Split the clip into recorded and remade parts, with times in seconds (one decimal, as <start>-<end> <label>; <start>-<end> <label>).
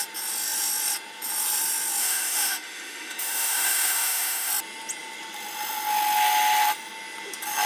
0.0-2.0 recorded; 2.0-4.5 remade; 4.5-7.7 recorded